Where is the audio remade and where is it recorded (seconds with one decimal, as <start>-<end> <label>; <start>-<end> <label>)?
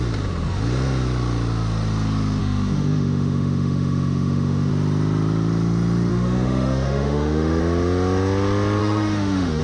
0.0-2.4 recorded; 2.4-4.7 remade; 4.7-6.1 recorded; 6.1-7.6 remade; 7.6-8.8 recorded; 8.8-9.6 remade